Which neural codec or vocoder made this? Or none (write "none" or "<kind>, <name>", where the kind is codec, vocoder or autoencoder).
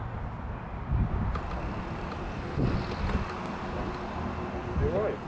none